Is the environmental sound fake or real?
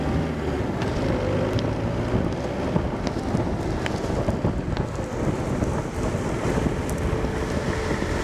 real